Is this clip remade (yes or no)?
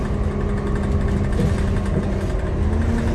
no